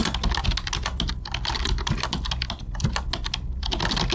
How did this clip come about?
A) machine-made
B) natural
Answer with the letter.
B